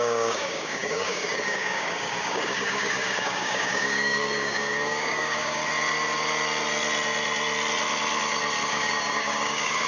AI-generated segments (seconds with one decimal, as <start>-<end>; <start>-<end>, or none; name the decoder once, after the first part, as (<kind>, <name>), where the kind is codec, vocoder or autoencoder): 0.0-5.6 (codec, DAC); 8.7-9.9